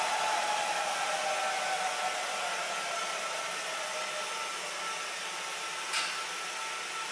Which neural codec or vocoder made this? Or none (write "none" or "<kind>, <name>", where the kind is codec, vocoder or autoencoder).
none